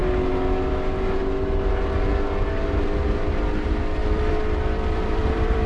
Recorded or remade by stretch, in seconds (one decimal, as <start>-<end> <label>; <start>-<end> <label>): 0.0-4.0 recorded; 4.0-5.7 remade